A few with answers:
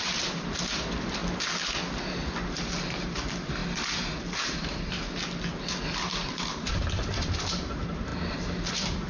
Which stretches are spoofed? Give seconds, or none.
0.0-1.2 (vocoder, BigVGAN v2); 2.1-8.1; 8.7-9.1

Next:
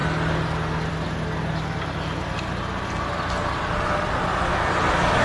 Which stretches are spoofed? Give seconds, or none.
none

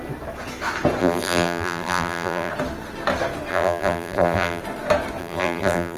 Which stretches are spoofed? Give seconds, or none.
1.0-2.5 (vocoder, BigVGAN v2); 3.5-4.6; 5.2-6.0